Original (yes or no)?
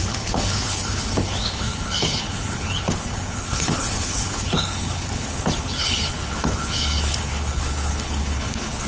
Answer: no